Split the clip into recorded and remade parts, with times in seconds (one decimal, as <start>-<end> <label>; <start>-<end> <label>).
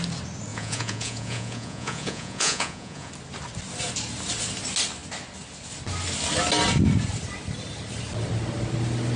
0.0-0.5 recorded; 0.5-3.1 remade; 3.1-9.2 recorded